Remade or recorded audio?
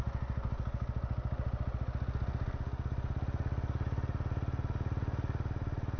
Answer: recorded